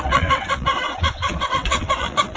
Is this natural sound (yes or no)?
no